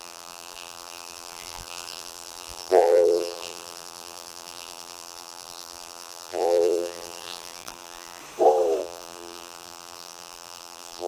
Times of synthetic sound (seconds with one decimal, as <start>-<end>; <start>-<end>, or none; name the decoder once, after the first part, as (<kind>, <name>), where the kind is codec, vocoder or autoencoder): 0.0-8.2 (vocoder, BigVGAN v2); 8.8-11.1